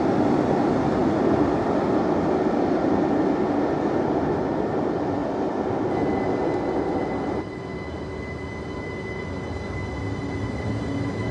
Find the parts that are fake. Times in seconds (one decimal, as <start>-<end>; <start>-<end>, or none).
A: none